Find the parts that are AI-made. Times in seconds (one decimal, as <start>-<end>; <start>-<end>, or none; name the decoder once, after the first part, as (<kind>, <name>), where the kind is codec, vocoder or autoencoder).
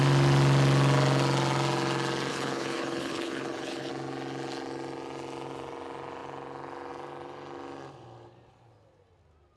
2.3-3.9 (codec, HILCodec)